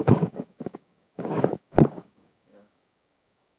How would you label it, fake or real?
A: fake